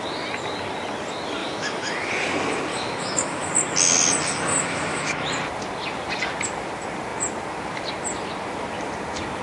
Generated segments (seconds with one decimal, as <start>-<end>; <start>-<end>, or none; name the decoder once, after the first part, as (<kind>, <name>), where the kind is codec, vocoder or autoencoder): 1.4-2.1 (autoencoder, DAC-VAE); 2.7-3.5; 4.5-5.3